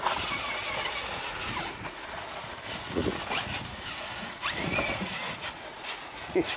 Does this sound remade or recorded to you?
remade